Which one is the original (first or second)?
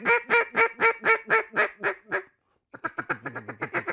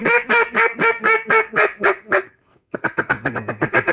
first